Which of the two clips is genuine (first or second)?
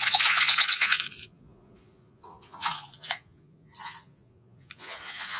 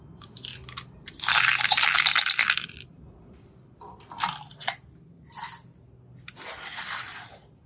second